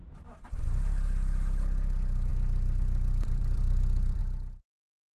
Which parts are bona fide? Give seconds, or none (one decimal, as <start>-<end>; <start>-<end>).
0.0-2.3; 4.2-5.2